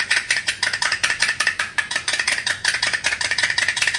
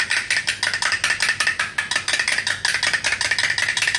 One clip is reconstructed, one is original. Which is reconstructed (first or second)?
first